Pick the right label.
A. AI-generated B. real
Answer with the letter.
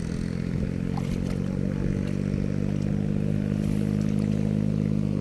B